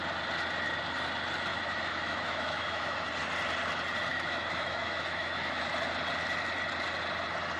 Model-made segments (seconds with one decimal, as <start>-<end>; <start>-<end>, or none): 1.5-3.1; 4.1-5.6